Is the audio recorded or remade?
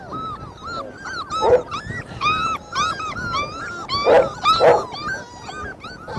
recorded